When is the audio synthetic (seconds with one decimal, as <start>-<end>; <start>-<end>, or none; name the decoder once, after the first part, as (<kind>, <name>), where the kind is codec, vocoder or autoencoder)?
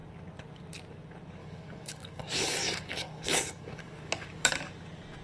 1.4-4.5 (codec, DAC)